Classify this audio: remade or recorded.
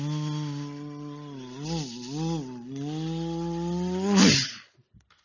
recorded